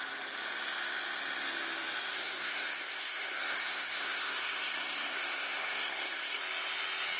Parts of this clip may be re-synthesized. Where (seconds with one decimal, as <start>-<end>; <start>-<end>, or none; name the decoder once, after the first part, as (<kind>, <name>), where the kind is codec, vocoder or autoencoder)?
2.1-6.4 (codec, SNAC)